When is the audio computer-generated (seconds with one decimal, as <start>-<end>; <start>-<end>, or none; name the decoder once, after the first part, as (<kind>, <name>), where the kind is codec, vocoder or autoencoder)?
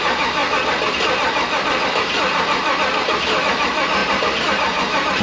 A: 4.0-5.2 (vocoder, BigVGAN v2)